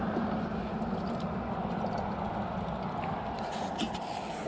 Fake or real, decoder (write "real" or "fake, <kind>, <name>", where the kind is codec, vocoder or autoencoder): real